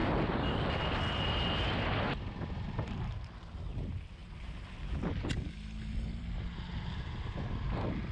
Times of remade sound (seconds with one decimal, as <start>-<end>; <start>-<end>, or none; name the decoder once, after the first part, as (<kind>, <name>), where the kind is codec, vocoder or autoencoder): 0.0-1.1 (vocoder, BigVGAN v2); 4.2-6.6